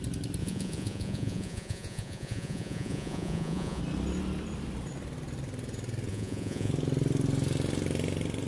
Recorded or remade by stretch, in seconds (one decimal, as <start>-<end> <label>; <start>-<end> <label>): 0.0-0.4 recorded; 0.4-3.8 remade; 3.8-6.1 recorded; 6.1-6.7 remade; 6.7-8.5 recorded